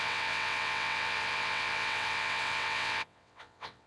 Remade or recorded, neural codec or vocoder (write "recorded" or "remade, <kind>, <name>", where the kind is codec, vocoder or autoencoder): remade, vocoder, WaveNeXt